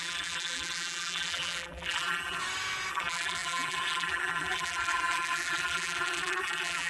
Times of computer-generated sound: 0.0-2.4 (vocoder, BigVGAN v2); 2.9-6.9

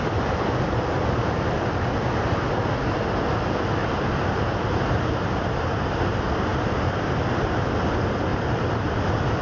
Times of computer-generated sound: 3.8-5.3 (vocoder, BigVGAN v2); 6.5-7.1; 8.3-9.0

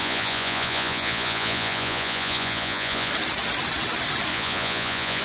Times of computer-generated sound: 0.0-3.1 (vocoder, Vocos); 4.3-5.2

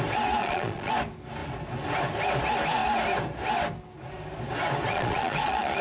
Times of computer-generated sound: 0.4-0.9 (vocoder, Vocos); 4.9-5.8

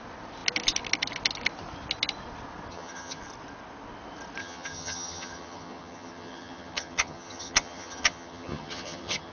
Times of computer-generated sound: 2.7-3.2 (vocoder, HiFi-GAN); 4.4-9.3